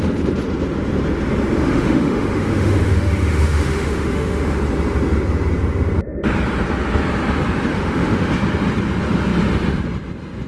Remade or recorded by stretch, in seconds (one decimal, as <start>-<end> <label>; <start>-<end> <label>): 0.0-1.6 recorded; 1.6-4.6 remade; 4.6-7.7 recorded; 7.7-8.3 remade; 8.3-10.5 recorded